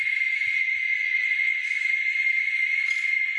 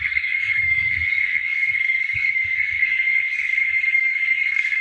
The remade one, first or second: second